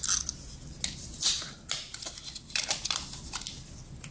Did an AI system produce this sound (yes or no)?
no